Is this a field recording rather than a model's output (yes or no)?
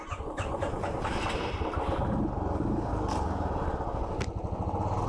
yes